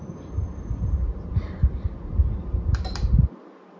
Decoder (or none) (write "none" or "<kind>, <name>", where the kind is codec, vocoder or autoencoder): none